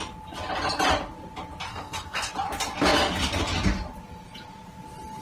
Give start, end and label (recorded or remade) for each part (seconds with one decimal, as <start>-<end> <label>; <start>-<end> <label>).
0.0-1.7 recorded; 1.7-2.3 remade; 2.3-5.2 recorded

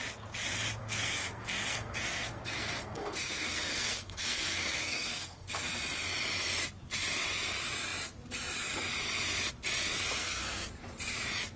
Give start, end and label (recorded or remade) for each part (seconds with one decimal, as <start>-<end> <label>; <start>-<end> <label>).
0.0-0.8 recorded; 0.8-5.7 remade; 5.7-10.2 recorded; 10.2-10.7 remade; 10.7-11.6 recorded

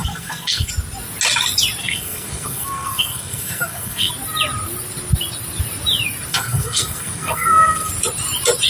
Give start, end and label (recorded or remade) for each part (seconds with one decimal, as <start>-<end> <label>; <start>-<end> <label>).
0.0-0.7 remade; 0.7-1.8 recorded; 1.8-4.1 remade; 4.1-6.3 recorded; 6.3-7.9 remade; 7.9-8.7 recorded

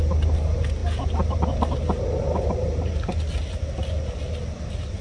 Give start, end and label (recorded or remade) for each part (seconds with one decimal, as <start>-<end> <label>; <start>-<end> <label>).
0.0-5.0 recorded

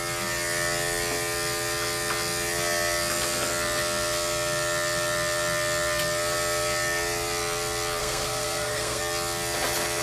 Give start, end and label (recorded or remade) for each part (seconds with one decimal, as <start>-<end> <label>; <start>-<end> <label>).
0.0-8.0 recorded; 8.0-9.0 remade; 9.0-10.0 recorded

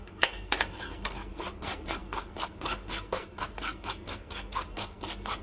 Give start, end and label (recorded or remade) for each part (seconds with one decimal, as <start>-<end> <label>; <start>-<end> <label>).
0.0-5.4 remade

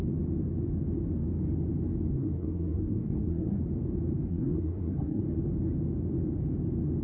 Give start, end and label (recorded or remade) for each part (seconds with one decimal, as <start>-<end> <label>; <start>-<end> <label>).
0.0-2.1 recorded; 2.1-3.6 remade; 3.6-4.3 recorded; 4.3-5.2 remade; 5.2-7.0 recorded